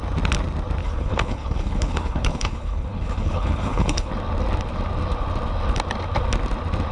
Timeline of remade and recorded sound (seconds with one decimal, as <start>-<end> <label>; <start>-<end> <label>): 0.0-0.8 recorded; 0.8-4.1 remade; 4.1-6.9 recorded